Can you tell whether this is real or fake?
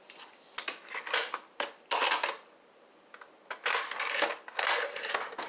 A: real